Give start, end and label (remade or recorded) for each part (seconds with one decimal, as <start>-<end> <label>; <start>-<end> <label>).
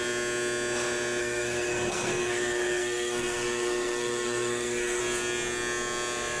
0.0-1.2 recorded; 1.2-5.0 remade; 5.0-6.4 recorded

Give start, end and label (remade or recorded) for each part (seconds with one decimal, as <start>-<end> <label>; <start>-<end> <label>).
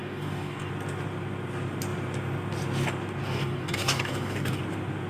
0.0-0.7 remade; 0.7-3.2 recorded; 3.2-4.6 remade; 4.6-5.1 recorded